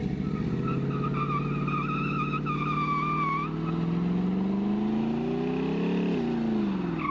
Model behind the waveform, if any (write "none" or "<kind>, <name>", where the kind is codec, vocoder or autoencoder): none